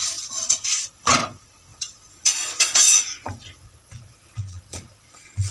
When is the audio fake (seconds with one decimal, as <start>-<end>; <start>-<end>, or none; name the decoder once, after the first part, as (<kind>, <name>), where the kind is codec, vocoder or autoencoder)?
0.0-5.5 (vocoder, Vocos)